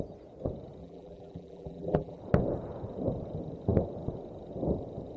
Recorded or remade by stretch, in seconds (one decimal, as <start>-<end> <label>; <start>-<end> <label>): 0.0-0.8 recorded; 0.8-2.2 remade; 2.2-5.2 recorded

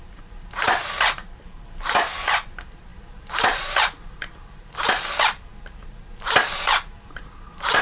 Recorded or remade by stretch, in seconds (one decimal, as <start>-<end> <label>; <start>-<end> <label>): 0.0-5.5 remade; 5.5-6.4 recorded; 6.4-7.8 remade

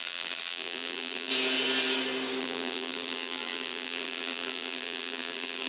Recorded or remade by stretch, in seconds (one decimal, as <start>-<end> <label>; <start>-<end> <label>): 0.0-1.3 remade; 1.3-2.4 recorded; 2.4-5.7 remade

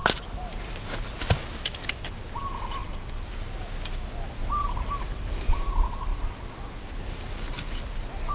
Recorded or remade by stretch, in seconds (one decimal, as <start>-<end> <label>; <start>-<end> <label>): 0.0-2.8 recorded; 2.8-3.3 remade; 3.3-4.4 recorded; 4.4-5.5 remade; 5.5-8.3 recorded

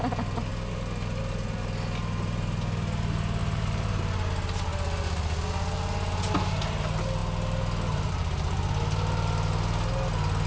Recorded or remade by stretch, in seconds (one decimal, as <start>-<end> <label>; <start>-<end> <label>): 0.0-3.4 recorded; 3.4-4.0 remade; 4.0-10.5 recorded

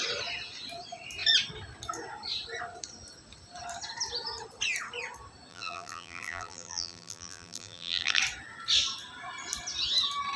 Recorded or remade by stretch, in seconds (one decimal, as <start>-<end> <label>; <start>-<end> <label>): 0.0-5.5 recorded; 5.5-8.2 remade; 8.2-10.4 recorded